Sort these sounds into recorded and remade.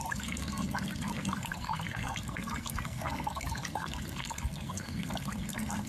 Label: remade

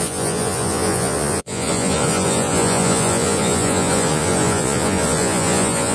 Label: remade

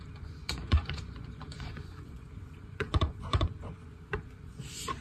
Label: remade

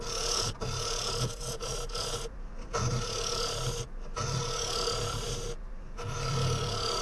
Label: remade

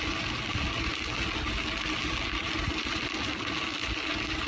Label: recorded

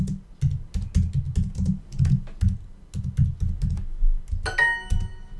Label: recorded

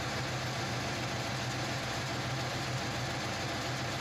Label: recorded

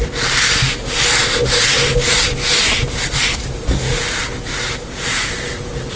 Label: recorded